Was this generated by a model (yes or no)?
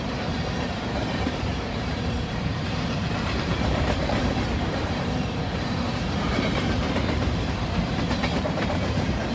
yes